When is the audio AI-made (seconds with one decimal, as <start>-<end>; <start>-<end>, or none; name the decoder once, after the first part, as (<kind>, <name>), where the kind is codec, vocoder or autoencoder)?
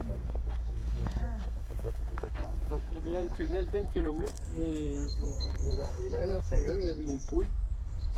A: 0.0-8.2 (codec, SNAC)